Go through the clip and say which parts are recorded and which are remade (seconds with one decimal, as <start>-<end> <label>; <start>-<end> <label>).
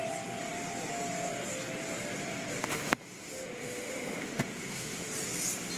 0.0-2.6 recorded; 2.6-5.1 remade; 5.1-5.8 recorded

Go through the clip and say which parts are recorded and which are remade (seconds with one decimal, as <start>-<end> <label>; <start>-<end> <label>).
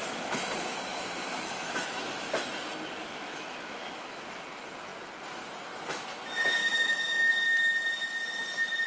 0.0-0.9 recorded; 0.9-2.3 remade; 2.3-3.0 recorded; 3.0-4.2 remade; 4.2-6.6 recorded; 6.6-7.3 remade; 7.3-8.9 recorded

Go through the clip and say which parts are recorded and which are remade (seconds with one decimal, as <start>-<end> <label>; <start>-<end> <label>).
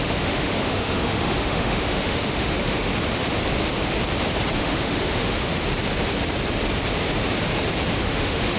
0.0-2.9 remade; 2.9-4.6 recorded; 4.6-5.6 remade; 5.6-8.0 recorded; 8.0-8.6 remade